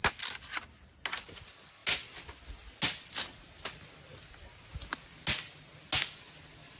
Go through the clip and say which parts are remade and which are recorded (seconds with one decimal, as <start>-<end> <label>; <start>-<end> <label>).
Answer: 0.0-6.8 recorded